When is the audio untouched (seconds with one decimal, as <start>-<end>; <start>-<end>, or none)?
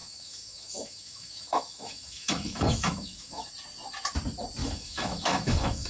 3.5-4.6